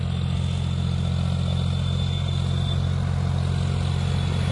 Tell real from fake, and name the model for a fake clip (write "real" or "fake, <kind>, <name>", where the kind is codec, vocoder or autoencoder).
real